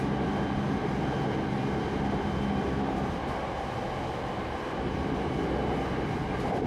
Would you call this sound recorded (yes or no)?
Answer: yes